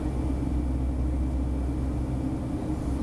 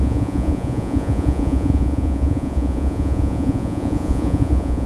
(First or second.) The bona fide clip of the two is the first